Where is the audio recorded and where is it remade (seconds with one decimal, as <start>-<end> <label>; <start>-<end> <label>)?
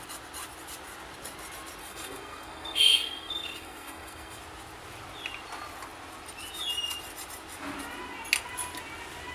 0.0-1.8 recorded; 1.8-4.4 remade; 4.4-9.3 recorded